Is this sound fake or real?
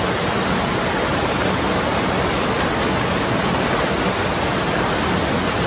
real